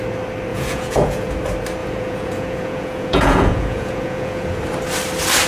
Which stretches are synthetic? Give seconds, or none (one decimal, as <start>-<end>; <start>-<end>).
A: 0.5-1.3; 1.8-4.6